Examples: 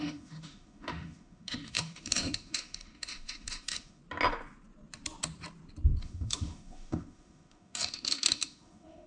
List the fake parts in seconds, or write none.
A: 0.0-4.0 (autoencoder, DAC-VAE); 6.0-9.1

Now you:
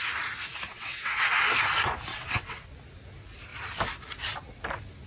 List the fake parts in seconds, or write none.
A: 0.7-1.2 (vocoder, WaveNeXt); 2.1-2.7

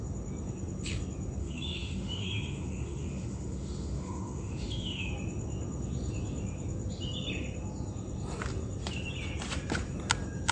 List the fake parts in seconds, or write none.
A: 1.4-5.1 (autoencoder, DAC-VAE)

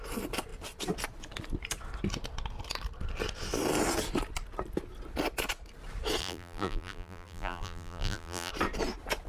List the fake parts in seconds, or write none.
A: 6.2-8.5 (vocoder, BigVGAN v2)

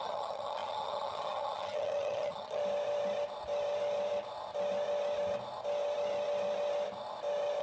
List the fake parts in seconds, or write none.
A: 0.0-2.6 (vocoder, HiFi-GAN)

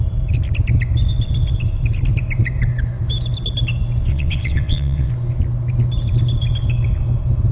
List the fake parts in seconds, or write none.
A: 4.1-5.1 (vocoder, WaveNeXt)

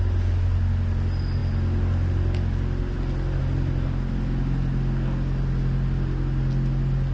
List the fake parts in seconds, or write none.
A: none